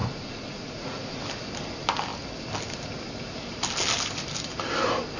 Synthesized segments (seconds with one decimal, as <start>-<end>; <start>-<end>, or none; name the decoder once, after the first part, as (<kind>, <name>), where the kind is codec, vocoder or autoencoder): 0.0-1.2 (vocoder, Vocos)